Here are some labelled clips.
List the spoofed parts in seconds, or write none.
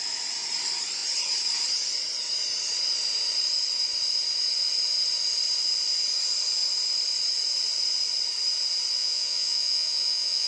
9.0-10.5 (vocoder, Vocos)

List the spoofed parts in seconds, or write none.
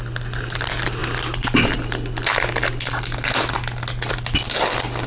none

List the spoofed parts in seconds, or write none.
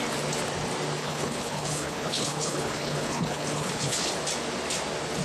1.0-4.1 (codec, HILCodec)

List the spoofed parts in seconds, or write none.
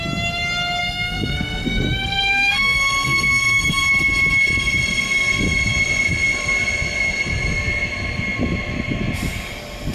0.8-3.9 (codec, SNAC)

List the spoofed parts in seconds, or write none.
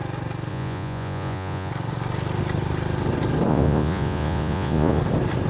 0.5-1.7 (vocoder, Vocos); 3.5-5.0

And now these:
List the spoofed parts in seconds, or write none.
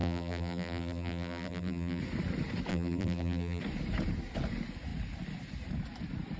0.0-2.0 (vocoder, BigVGAN v2); 2.7-3.6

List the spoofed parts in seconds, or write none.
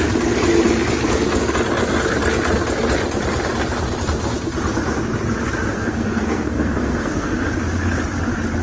5.7-7.5 (codec, SNAC)